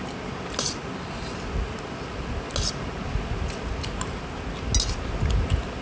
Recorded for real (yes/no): yes